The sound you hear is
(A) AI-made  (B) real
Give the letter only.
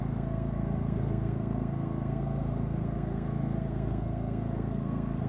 A